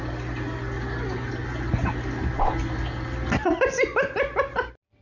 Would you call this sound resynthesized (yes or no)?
no